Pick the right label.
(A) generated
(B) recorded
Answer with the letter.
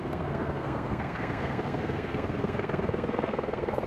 A